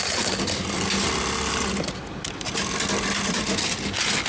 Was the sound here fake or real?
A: real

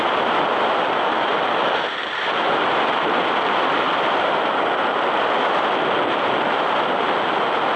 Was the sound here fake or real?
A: real